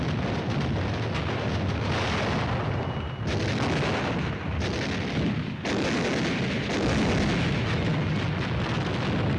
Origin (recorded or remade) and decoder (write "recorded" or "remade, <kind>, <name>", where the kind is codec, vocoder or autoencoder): recorded